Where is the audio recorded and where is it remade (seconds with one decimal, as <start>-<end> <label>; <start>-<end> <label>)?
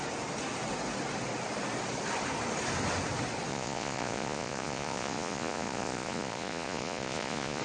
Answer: 0.0-3.5 recorded; 3.5-7.6 remade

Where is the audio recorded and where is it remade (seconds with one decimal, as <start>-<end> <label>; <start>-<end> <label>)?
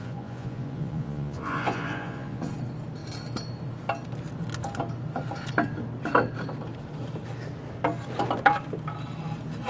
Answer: 0.0-2.5 remade; 2.5-9.7 recorded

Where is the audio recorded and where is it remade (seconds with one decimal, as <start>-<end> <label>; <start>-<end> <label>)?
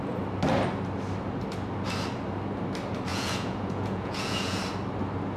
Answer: 0.0-3.1 recorded; 3.1-4.6 remade; 4.6-5.4 recorded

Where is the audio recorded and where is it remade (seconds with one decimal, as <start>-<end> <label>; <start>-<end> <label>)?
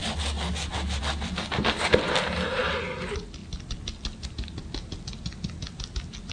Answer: 0.0-6.3 recorded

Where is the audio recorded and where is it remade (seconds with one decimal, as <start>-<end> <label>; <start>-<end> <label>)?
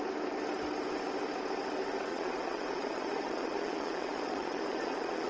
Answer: 0.0-2.1 recorded; 2.1-5.3 remade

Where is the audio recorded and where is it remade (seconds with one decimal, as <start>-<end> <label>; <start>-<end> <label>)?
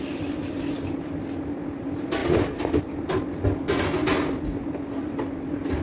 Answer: 0.0-5.8 recorded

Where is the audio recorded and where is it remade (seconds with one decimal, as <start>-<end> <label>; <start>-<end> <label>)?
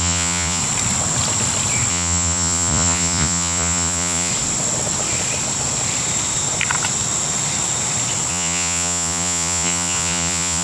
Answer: 0.0-0.6 remade; 0.6-1.9 recorded; 1.9-4.3 remade; 4.3-8.3 recorded; 8.3-10.6 remade